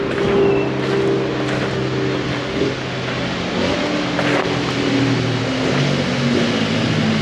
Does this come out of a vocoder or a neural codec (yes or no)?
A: no